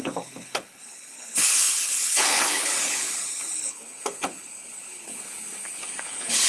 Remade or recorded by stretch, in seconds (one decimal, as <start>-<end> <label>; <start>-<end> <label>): 0.0-6.5 remade